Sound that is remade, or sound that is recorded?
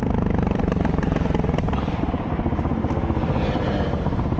remade